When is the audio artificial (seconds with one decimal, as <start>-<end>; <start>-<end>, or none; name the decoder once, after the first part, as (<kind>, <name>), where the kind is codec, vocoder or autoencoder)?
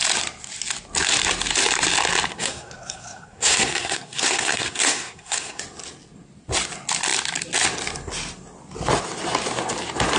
2.3-5.6 (codec, SNAC)